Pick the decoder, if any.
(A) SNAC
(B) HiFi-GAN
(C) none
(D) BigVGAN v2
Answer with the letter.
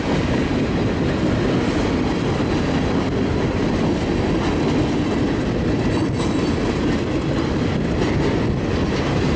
C